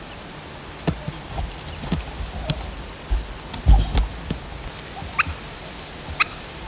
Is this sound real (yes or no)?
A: yes